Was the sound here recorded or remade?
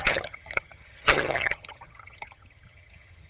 remade